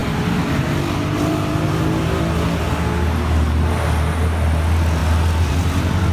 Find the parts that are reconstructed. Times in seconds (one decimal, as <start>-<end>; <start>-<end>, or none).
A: 0.0-1.7